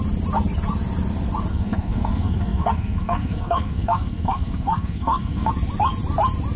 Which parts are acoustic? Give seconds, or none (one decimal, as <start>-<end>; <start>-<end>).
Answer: 0.0-1.5; 5.5-6.6